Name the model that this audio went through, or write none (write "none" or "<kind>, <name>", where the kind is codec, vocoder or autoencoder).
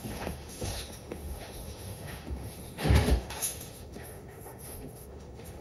autoencoder, DAC-VAE